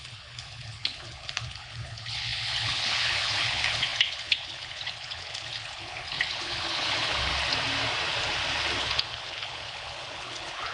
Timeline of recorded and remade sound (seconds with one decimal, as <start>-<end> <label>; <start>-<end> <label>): 0.0-7.3 remade; 7.3-8.8 recorded; 8.8-10.7 remade